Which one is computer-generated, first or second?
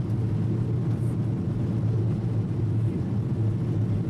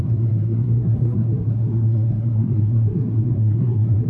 second